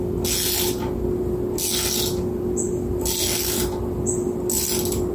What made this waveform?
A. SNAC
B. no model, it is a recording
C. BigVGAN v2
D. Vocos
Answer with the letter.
B